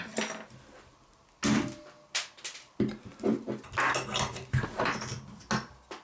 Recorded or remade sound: recorded